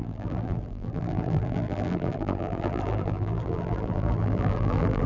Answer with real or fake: fake